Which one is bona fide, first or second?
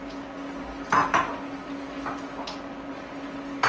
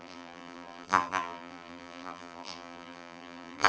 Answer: first